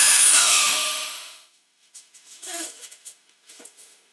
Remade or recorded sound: remade